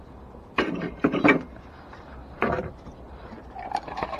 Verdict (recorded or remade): remade